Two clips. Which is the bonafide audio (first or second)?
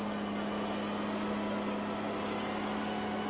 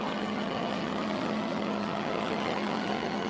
first